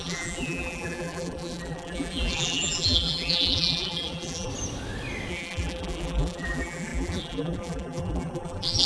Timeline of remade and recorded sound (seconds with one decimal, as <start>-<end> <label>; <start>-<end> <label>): 0.0-4.5 remade; 4.5-5.3 recorded; 5.3-8.9 remade